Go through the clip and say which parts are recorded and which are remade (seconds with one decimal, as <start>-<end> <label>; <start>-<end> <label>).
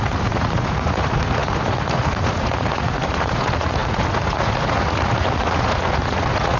0.0-6.6 remade